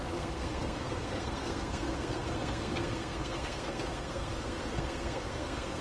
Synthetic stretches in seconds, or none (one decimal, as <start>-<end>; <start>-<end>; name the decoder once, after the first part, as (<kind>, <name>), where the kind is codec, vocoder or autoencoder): 0.0-5.8 (codec, SNAC)